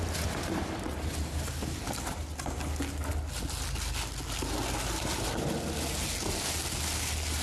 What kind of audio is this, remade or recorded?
recorded